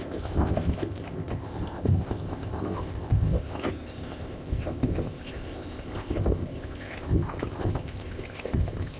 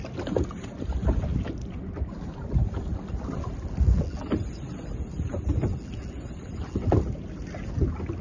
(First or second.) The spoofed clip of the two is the first